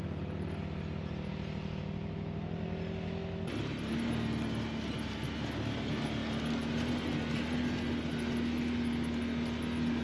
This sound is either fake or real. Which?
real